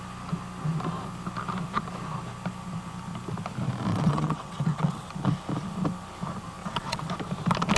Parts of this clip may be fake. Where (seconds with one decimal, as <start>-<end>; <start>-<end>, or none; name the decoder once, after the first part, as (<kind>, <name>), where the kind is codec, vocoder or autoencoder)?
3.9-5.1 (vocoder, WaveNeXt); 6.6-7.1